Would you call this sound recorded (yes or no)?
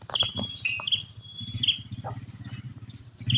yes